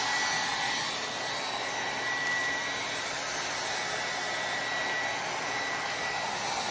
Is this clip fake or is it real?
real